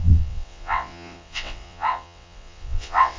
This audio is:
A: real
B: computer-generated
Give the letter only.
B